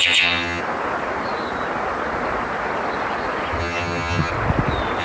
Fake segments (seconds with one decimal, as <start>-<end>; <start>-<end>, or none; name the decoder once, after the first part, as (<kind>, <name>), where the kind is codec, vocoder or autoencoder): 0.0-0.6 (vocoder, HiFi-GAN); 3.6-4.3